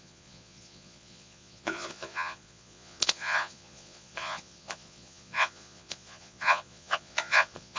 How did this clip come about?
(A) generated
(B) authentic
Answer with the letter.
A